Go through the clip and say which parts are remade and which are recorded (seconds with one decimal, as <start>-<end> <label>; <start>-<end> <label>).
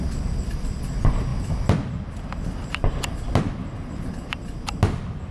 0.0-5.3 recorded